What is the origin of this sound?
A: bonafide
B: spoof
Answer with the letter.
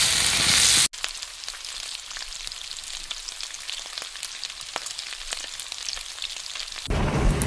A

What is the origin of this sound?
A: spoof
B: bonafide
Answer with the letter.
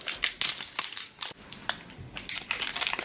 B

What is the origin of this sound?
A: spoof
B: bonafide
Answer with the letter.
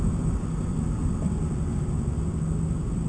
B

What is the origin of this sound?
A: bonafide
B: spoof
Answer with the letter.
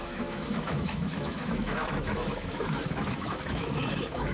B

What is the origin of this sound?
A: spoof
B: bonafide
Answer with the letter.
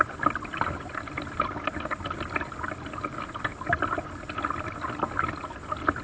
B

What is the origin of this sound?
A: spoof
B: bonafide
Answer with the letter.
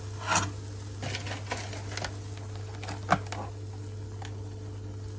B